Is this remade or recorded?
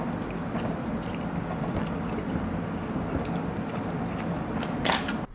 recorded